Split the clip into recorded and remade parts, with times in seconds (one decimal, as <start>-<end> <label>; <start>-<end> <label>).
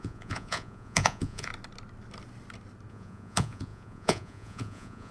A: 0.0-1.5 remade; 1.5-2.9 recorded; 2.9-5.1 remade